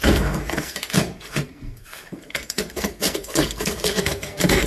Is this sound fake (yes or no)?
yes